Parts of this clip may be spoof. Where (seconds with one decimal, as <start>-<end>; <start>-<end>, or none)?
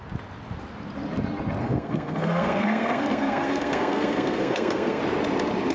1.6-5.0